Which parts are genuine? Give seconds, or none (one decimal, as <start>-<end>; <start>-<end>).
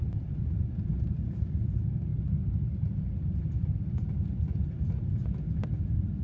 0.0-6.2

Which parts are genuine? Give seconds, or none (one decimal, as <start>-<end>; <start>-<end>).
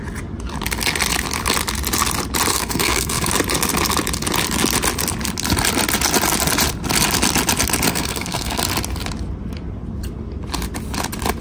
0.0-2.5; 3.3-7.9; 8.6-11.4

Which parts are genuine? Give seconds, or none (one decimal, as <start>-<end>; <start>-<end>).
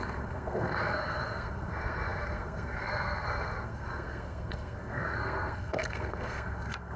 none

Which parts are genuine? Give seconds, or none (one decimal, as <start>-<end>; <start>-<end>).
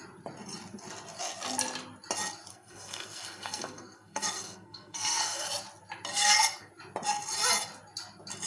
0.0-2.5; 5.5-6.1; 6.7-8.5